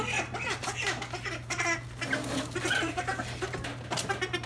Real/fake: real